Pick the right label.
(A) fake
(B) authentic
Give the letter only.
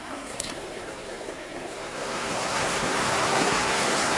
A